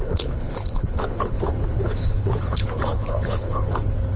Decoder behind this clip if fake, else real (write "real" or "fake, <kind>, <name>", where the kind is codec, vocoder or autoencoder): fake, codec, HILCodec